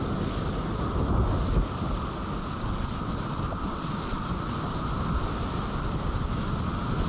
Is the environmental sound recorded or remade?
recorded